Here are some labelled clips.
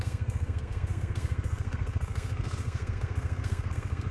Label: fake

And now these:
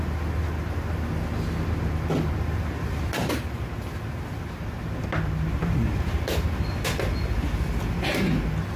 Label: real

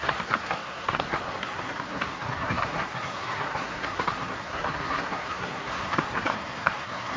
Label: fake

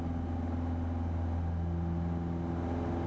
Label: real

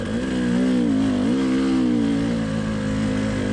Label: real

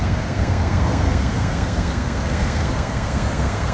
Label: fake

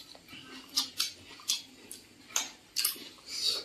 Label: real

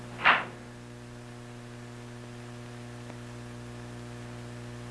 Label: real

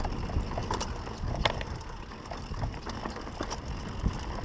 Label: real